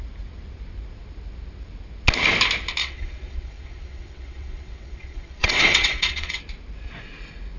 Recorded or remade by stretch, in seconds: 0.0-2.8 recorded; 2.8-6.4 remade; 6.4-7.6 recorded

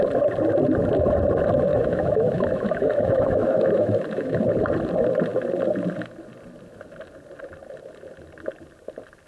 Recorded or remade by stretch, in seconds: 0.0-1.7 recorded; 1.7-4.4 remade; 4.4-9.3 recorded

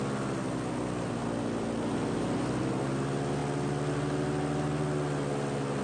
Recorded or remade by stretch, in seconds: 0.0-5.8 recorded

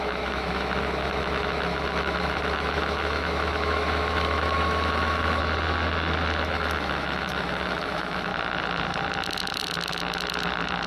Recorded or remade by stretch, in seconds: 0.0-5.4 remade; 5.4-6.5 recorded; 6.5-8.3 remade; 8.3-10.9 recorded

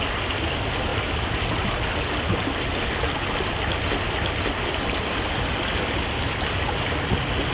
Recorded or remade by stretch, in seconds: 0.0-7.5 recorded